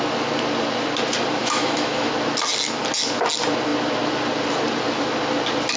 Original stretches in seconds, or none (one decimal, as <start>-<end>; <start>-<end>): 0.0-1.4; 2.1-5.8